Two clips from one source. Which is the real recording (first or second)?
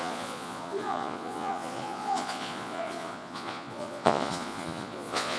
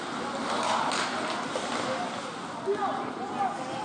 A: second